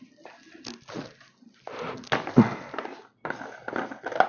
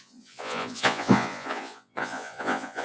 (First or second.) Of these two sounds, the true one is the first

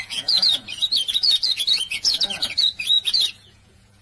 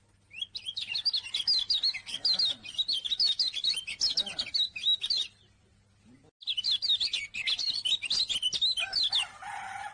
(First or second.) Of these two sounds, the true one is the second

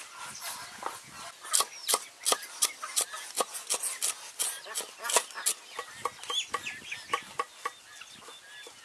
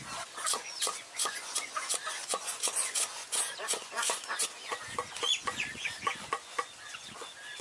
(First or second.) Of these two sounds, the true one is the first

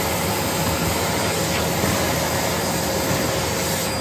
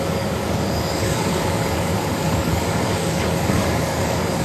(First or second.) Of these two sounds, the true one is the first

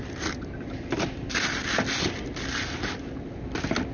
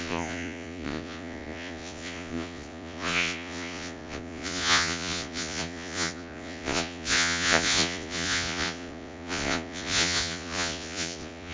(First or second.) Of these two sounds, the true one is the first